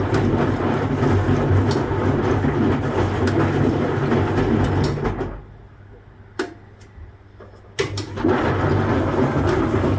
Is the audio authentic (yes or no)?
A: yes